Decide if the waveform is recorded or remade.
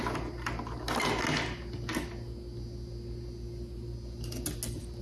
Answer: recorded